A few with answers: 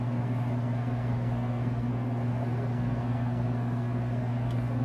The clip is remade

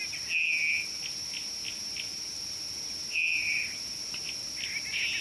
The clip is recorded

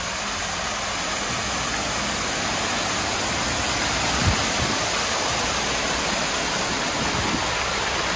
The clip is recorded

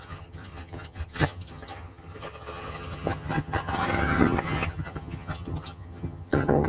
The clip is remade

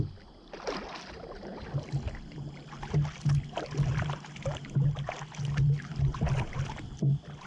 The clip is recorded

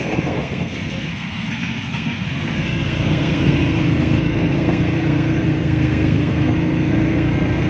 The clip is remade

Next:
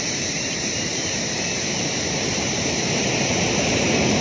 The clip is remade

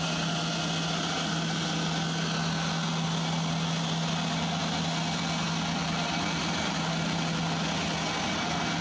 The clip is recorded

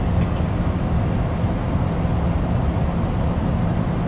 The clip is recorded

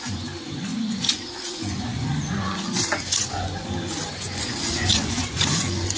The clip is remade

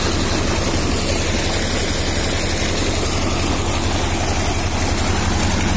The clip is recorded